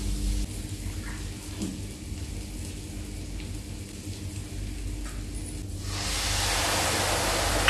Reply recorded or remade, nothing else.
recorded